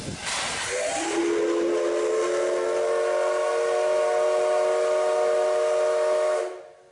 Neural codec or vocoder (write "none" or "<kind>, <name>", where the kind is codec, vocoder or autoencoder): none